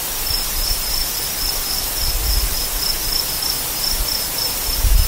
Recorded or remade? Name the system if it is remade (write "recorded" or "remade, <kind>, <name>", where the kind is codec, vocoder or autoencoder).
recorded